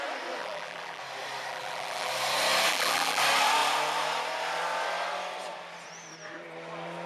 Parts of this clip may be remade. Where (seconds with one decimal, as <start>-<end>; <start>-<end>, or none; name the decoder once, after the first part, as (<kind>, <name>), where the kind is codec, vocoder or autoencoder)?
0.4-1.0 (vocoder, BigVGAN v2); 1.5-2.1; 2.7-3.2

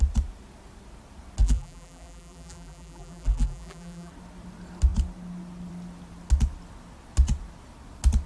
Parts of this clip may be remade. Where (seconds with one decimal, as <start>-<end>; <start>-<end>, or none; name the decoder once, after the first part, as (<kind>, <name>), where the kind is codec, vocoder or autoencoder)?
1.4-4.1 (vocoder, BigVGAN v2)

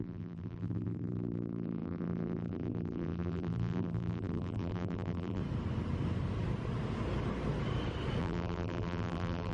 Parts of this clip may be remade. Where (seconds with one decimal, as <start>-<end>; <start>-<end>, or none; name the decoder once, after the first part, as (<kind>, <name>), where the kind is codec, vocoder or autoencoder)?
0.0-5.4 (vocoder, BigVGAN v2); 8.2-9.5

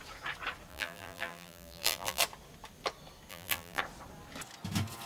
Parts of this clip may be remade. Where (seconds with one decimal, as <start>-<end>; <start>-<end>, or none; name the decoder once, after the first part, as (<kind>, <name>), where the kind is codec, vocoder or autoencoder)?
0.7-2.2 (vocoder, BigVGAN v2); 3.3-3.8